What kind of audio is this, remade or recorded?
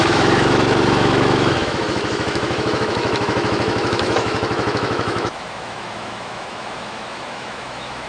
remade